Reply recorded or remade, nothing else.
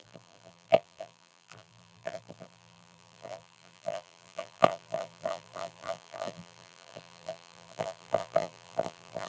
remade